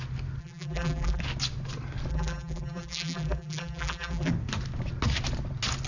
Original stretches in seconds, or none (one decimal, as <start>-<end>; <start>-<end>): 0.0-0.4; 1.2-2.1; 4.3-5.9